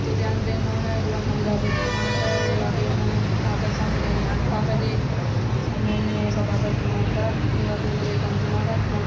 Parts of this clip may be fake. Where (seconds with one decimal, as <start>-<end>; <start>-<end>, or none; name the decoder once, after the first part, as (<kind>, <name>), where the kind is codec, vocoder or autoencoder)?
none